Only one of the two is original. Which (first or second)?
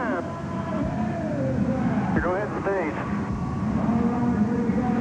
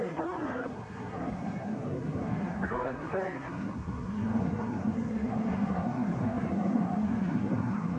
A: first